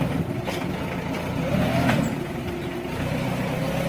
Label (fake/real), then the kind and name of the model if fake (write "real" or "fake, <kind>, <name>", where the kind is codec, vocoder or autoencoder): real